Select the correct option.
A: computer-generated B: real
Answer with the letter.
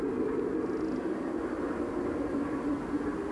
B